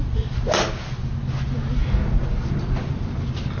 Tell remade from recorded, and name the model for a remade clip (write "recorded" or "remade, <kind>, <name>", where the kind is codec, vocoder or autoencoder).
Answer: recorded